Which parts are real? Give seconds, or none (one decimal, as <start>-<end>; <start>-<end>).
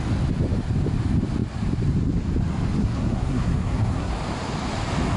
0.0-2.8; 4.1-5.2